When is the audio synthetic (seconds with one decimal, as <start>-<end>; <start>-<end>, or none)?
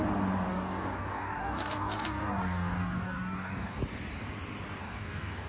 0.5-3.8; 4.8-5.5